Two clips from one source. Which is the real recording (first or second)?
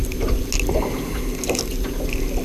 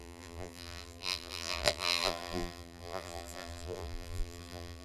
first